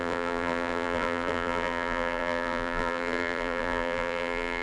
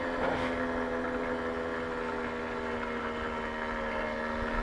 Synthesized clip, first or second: first